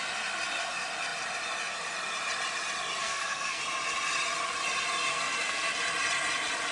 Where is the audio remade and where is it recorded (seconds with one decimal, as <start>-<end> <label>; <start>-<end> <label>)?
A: 0.0-3.0 recorded; 3.0-3.6 remade; 3.6-5.1 recorded; 5.1-5.7 remade; 5.7-6.7 recorded